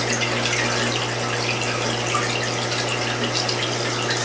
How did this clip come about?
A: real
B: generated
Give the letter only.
A